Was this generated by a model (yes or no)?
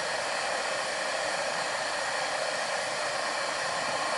no